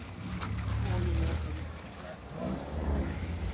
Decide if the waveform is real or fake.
fake